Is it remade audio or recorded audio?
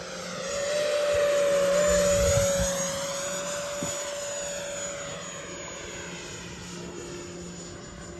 recorded